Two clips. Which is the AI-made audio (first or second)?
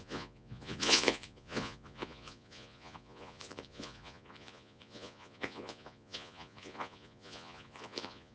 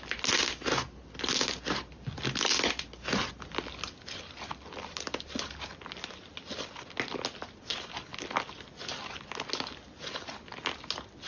first